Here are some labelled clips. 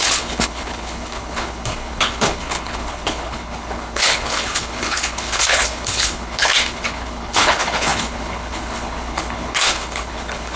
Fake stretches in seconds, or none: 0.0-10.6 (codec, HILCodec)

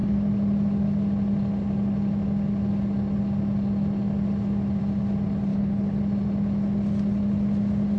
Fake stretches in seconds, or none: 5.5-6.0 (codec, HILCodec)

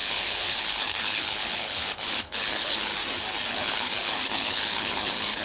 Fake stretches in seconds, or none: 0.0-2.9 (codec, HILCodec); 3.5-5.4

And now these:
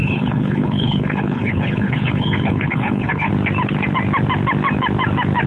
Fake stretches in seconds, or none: 0.0-3.3 (codec, HILCodec)